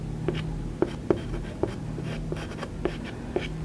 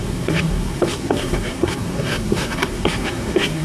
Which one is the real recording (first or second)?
first